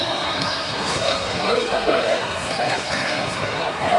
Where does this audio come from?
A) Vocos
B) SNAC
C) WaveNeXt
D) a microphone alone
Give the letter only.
B